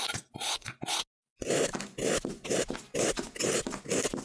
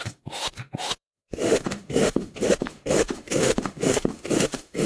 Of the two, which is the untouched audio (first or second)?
first